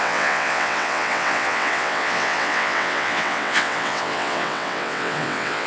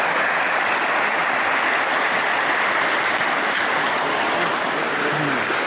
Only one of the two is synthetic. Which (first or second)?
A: first